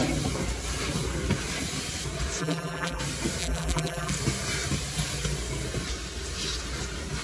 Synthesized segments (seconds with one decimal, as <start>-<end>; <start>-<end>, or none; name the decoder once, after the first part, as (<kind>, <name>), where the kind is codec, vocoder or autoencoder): 2.4-3.0 (vocoder, BigVGAN v2); 3.4-4.1